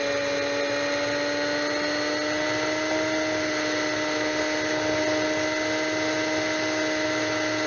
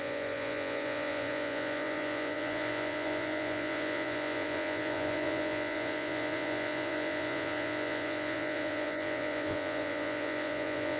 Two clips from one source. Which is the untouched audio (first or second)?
first